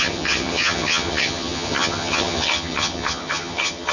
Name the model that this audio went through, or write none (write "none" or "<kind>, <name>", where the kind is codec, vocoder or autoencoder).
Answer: vocoder, HiFi-GAN